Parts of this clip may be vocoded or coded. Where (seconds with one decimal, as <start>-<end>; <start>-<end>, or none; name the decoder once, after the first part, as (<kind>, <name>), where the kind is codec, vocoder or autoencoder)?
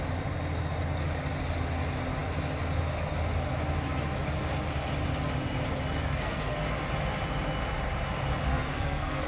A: 6.0-6.6 (codec, SNAC); 8.5-9.3